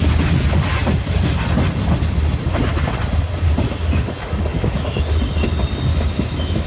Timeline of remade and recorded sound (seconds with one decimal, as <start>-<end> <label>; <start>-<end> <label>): 0.0-4.5 recorded; 4.5-5.0 remade; 5.0-5.9 recorded; 5.9-6.7 remade